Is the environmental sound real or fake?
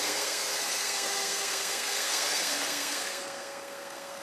fake